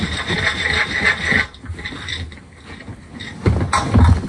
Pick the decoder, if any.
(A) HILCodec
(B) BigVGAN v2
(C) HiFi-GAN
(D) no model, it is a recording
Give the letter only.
D